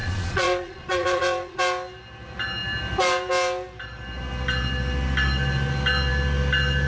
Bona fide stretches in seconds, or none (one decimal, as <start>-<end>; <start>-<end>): 1.6-6.9